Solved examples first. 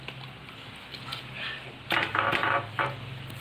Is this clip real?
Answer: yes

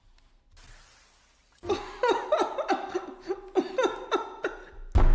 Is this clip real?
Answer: yes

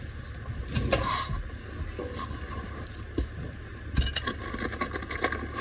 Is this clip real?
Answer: yes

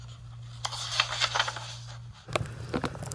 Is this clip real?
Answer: yes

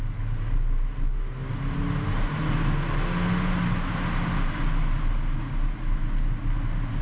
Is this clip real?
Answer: yes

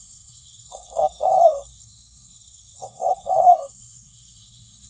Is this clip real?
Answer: no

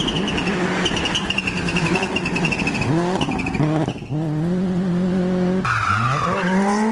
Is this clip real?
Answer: yes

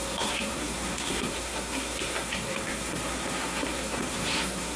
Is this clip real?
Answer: no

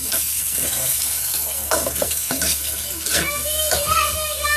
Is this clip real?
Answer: no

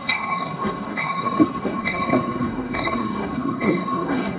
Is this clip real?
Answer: no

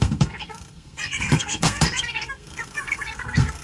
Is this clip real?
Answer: no